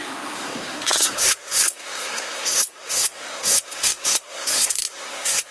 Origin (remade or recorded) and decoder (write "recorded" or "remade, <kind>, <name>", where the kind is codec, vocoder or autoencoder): remade, codec, SNAC